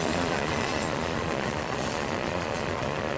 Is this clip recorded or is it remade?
remade